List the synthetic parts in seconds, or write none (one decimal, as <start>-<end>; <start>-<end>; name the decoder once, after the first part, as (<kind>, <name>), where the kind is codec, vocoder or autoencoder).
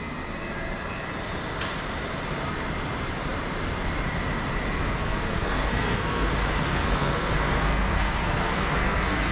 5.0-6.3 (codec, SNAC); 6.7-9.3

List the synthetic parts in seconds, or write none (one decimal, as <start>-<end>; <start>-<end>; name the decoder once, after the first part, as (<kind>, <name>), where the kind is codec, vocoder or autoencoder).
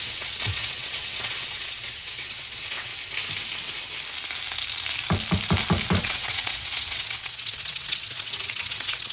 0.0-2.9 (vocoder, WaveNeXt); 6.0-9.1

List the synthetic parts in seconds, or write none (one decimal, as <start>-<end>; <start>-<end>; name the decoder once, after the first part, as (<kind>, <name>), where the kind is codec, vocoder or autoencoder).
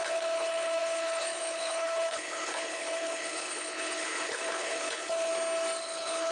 0.0-5.3 (codec, HILCodec); 5.8-6.3